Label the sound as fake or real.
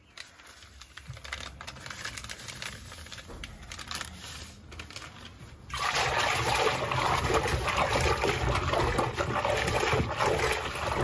real